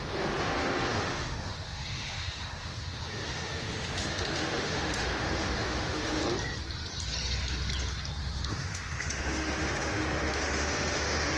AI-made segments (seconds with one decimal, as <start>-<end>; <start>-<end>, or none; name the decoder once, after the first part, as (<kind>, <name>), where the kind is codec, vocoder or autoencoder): 0.0-6.2 (autoencoder, DAC-VAE); 8.2-11.4